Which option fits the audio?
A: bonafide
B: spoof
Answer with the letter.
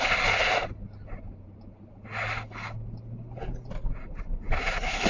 A